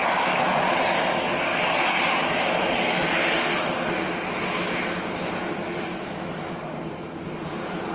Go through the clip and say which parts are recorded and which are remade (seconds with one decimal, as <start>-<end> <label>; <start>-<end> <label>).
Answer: 0.0-1.5 recorded; 1.5-3.1 remade; 3.1-5.9 recorded; 5.9-6.6 remade; 6.6-7.9 recorded